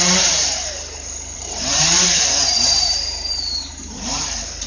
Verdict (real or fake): fake